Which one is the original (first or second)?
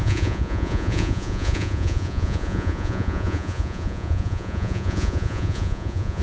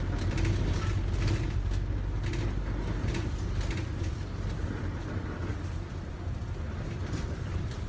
second